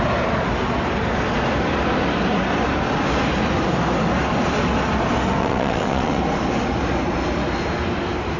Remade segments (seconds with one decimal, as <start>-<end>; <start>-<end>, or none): 5.4-6.2